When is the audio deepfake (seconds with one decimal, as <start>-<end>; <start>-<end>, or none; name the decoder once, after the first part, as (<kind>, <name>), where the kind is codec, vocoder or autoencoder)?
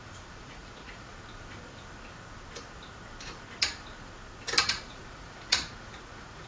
0.0-1.1 (vocoder, Vocos); 4.6-6.5